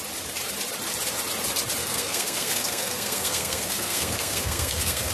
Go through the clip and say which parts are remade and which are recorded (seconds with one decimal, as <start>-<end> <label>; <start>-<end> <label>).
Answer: 0.0-1.8 recorded; 1.8-5.1 remade